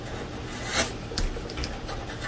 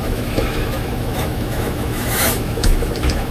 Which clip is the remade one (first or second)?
second